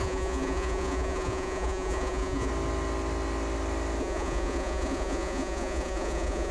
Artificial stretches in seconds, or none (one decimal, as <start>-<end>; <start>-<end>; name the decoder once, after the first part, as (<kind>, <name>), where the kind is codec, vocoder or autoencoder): 0.0-2.5 (vocoder, Vocos); 4.0-6.5